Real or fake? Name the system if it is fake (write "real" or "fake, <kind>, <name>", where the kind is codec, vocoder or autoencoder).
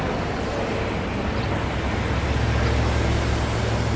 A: real